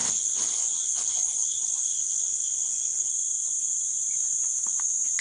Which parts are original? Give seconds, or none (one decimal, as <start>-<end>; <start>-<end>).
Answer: 3.1-5.2